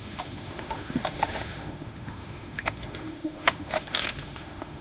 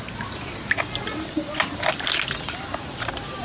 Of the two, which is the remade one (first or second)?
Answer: first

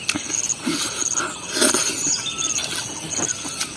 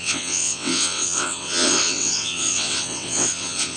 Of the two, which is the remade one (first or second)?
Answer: second